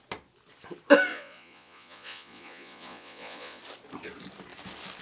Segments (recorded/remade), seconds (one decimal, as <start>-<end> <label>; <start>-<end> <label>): 0.0-1.1 recorded; 1.1-3.6 remade; 3.6-5.0 recorded